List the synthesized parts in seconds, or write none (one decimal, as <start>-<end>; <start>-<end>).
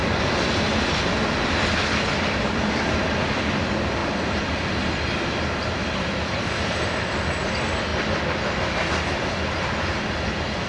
none